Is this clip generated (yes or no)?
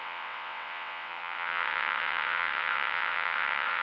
yes